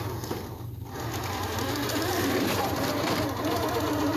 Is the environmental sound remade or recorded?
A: remade